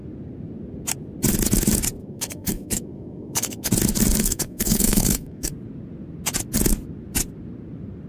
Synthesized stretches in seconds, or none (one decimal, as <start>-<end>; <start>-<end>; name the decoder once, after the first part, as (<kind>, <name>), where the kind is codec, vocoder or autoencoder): 2.0-3.7 (codec, SNAC); 4.2-5.5

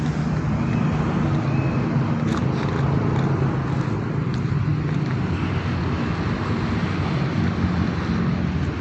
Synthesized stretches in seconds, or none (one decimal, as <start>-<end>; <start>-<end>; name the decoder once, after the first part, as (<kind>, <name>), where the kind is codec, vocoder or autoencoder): none

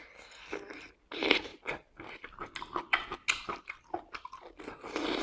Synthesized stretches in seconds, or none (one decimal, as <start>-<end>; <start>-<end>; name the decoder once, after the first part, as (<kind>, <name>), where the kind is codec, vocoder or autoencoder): none

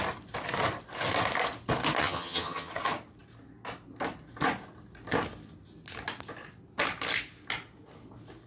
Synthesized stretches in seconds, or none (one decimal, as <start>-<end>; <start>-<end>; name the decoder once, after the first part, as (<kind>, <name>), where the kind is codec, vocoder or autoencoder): 2.0-2.7 (vocoder, HiFi-GAN)

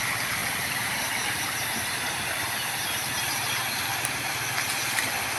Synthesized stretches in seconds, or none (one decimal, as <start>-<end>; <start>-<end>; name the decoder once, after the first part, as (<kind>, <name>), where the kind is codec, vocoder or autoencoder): 0.4-3.5 (vocoder, BigVGAN v2)

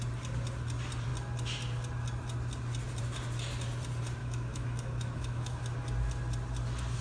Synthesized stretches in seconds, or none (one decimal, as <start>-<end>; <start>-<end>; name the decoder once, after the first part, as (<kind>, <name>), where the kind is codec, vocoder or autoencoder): 4.2-5.6 (autoencoder, DAC-VAE)

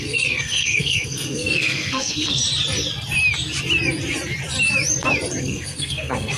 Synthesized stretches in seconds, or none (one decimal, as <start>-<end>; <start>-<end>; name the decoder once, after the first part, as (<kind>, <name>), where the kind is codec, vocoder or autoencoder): 0.0-2.4 (codec, SNAC); 5.4-6.4

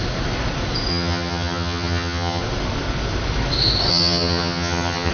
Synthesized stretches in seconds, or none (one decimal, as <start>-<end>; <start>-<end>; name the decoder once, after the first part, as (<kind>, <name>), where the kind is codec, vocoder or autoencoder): 0.9-2.4 (vocoder, HiFi-GAN); 3.9-5.1